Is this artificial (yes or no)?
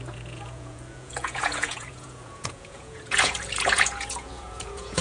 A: yes